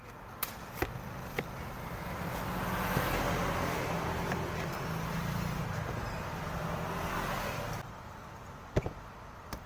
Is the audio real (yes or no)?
yes